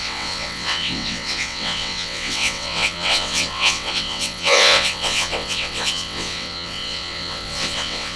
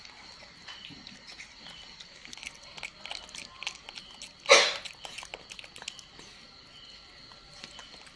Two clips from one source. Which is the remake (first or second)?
first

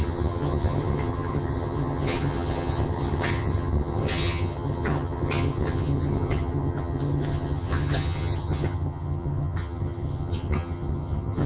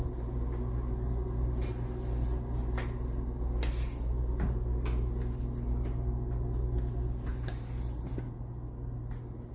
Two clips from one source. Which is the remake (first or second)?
first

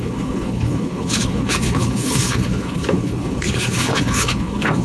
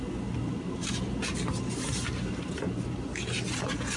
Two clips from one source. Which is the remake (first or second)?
first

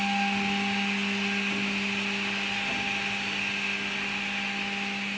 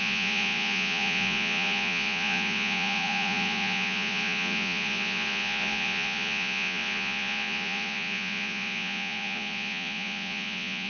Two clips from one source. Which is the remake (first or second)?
second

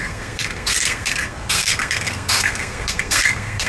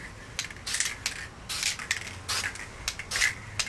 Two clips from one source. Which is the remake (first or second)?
first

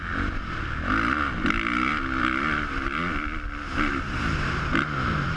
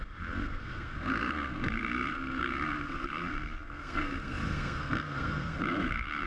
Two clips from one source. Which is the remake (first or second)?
second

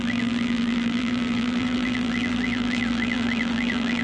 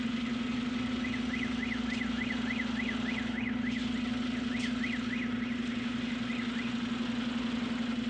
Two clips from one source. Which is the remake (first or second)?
first